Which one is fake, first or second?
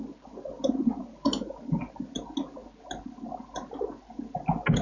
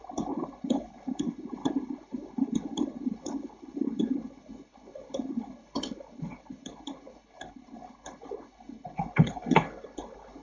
second